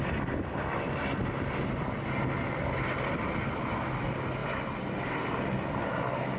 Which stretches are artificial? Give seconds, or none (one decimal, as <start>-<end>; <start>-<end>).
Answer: 4.4-5.2